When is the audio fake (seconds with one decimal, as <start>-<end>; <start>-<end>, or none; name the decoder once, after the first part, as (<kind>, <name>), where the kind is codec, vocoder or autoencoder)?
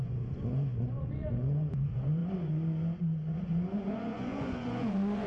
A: 0.0-5.3 (vocoder, Vocos)